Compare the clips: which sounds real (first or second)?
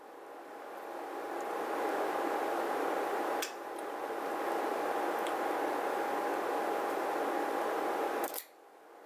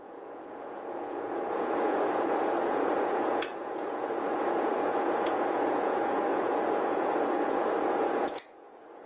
first